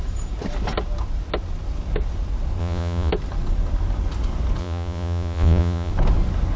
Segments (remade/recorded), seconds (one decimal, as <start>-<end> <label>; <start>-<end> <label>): 0.0-2.6 recorded; 2.6-3.1 remade; 3.1-4.6 recorded; 4.6-5.9 remade; 5.9-6.6 recorded